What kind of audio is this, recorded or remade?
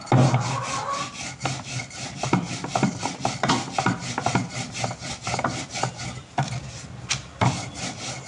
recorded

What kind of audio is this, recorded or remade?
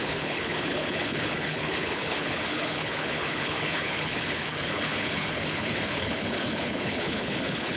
remade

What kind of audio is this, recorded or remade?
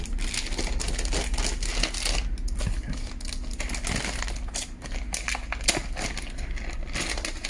recorded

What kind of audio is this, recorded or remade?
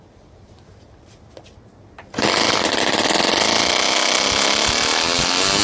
recorded